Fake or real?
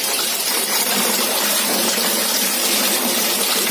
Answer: fake